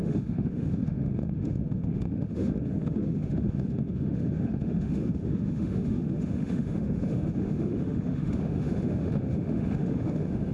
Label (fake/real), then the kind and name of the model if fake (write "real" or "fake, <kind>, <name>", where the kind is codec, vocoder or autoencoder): fake, autoencoder, DAC-VAE